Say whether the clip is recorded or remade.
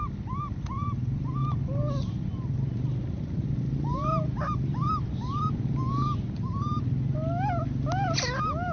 recorded